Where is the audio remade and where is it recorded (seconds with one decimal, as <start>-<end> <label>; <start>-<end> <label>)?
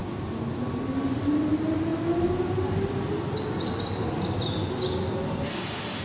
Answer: 0.0-6.0 recorded